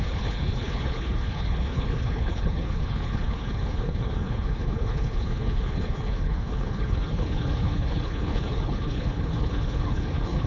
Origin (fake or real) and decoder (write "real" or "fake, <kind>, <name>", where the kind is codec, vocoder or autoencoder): fake, codec, HILCodec